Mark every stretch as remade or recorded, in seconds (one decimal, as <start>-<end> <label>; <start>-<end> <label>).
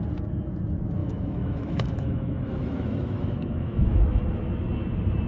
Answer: 0.0-1.0 recorded; 1.0-4.2 remade; 4.2-5.3 recorded